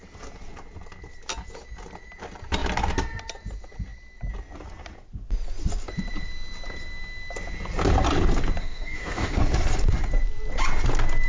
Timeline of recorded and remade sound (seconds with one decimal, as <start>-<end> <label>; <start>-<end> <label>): 0.0-8.6 recorded; 8.6-9.4 remade; 9.4-11.3 recorded